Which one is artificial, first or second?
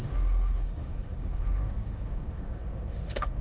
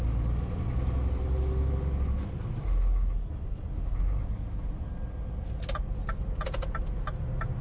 first